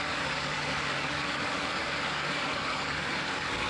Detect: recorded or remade remade